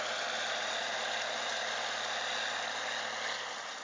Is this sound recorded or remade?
recorded